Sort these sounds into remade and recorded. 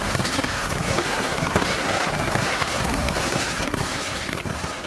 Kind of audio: remade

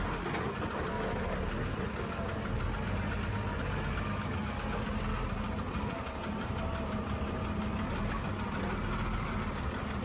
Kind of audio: recorded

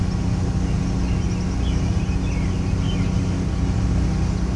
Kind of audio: recorded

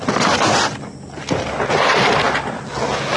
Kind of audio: recorded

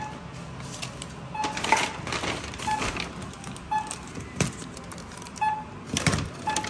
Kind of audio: recorded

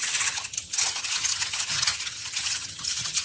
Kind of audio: remade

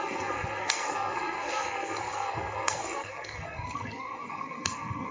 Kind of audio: remade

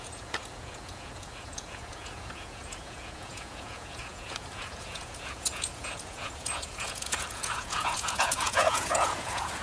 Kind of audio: remade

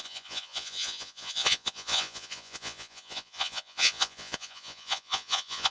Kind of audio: remade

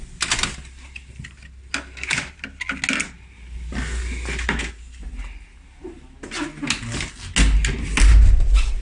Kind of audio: recorded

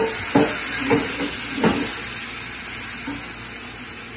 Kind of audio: recorded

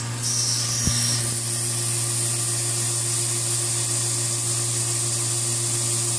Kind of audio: recorded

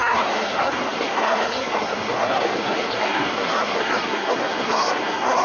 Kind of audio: remade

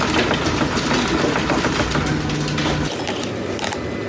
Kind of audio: recorded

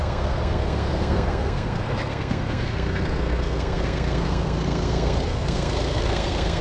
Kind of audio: remade